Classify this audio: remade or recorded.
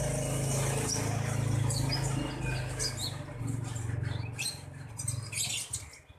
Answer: recorded